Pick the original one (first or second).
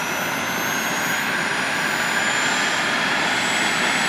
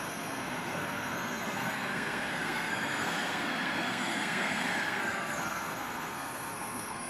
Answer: first